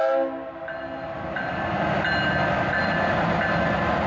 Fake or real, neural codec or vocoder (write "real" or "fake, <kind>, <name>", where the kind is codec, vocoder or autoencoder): real